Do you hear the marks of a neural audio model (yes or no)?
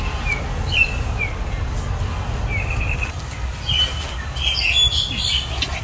no